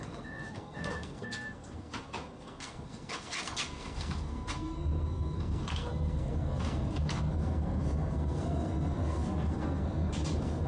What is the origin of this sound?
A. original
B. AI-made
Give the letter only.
B